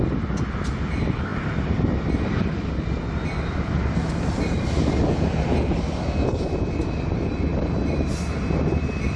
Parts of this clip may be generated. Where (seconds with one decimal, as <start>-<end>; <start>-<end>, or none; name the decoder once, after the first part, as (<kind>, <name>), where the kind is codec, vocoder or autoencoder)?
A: 7.5-8.1 (vocoder, BigVGAN v2)